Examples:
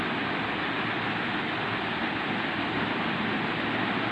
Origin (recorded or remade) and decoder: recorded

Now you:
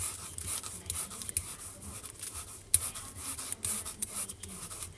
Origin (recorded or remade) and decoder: recorded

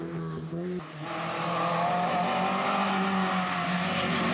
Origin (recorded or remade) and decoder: recorded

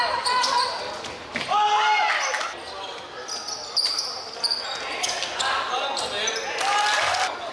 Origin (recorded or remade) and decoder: recorded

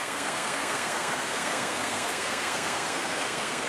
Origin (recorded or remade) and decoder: remade, codec, SNAC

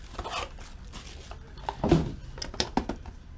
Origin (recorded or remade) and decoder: recorded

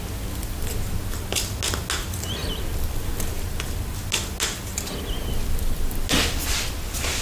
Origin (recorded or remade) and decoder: recorded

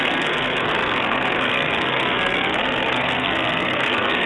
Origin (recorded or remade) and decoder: remade, codec, SNAC